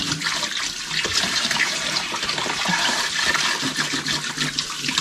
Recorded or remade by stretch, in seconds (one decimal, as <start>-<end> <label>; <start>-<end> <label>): 0.0-1.1 recorded; 1.1-3.4 remade; 3.4-5.0 recorded